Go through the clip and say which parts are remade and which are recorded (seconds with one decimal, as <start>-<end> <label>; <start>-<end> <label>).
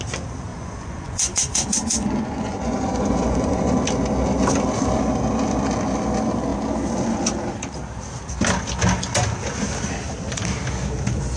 0.0-0.5 recorded; 0.5-3.8 remade; 3.8-11.4 recorded